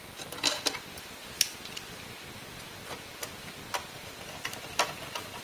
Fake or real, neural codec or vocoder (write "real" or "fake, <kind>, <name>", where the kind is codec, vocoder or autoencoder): real